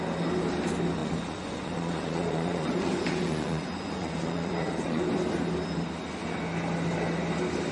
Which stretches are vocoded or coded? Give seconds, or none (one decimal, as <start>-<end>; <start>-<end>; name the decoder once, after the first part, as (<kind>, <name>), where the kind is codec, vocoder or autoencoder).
1.0-5.0 (vocoder, Vocos)